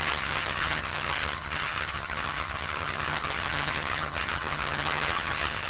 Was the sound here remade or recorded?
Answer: remade